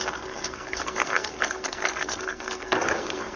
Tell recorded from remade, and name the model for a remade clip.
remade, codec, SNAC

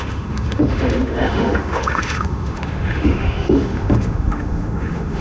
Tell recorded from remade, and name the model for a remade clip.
remade, autoencoder, DAC-VAE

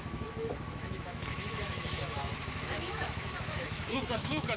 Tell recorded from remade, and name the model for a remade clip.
remade, autoencoder, DAC-VAE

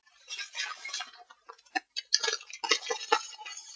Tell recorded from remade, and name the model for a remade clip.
recorded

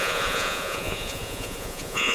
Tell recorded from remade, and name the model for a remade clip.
remade, vocoder, Vocos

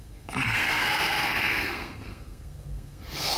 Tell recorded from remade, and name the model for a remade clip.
remade, codec, SNAC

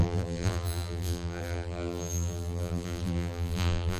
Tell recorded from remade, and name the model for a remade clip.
remade, vocoder, BigVGAN v2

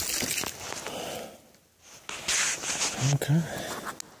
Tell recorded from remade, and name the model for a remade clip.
recorded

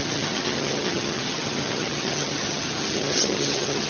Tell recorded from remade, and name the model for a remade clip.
remade, vocoder, HiFi-GAN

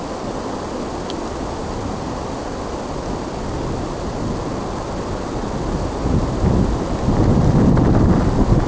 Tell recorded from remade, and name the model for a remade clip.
recorded